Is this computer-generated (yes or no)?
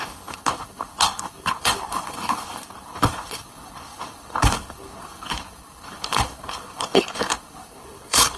yes